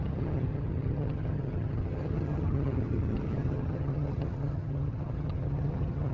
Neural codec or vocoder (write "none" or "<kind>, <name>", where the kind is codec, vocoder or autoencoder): vocoder, HiFi-GAN